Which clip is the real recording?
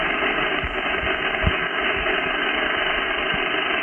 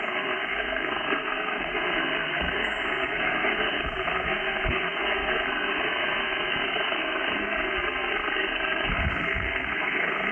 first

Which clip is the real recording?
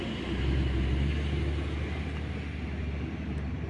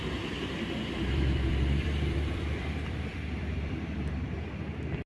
first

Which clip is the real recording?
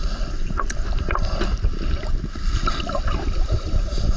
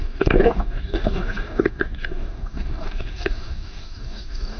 first